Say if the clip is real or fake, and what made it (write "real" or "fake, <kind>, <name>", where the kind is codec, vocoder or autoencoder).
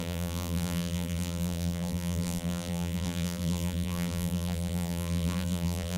fake, vocoder, BigVGAN v2